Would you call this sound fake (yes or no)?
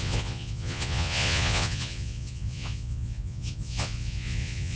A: yes